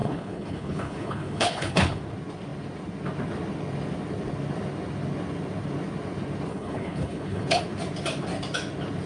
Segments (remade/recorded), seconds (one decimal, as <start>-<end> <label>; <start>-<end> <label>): 0.0-2.0 remade; 2.0-6.5 recorded; 6.5-7.6 remade; 7.6-9.1 recorded